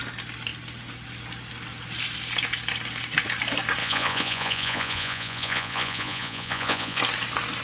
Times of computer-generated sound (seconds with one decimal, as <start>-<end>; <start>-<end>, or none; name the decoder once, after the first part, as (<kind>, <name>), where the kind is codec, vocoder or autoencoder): 3.8-7.0 (vocoder, Vocos)